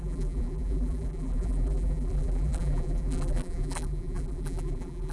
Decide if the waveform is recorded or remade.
remade